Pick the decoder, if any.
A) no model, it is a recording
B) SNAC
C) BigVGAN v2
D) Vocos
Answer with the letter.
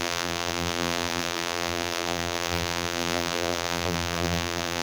C